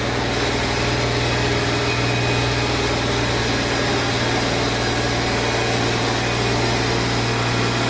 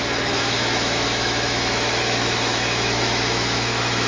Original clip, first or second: first